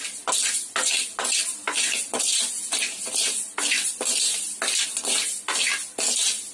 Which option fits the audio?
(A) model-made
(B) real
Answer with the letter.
B